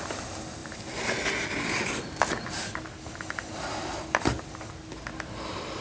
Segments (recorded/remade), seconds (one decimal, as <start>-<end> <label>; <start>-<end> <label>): 0.0-5.8 recorded